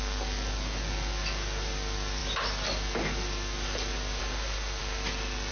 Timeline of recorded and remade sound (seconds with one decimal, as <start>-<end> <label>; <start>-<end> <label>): 0.0-5.5 recorded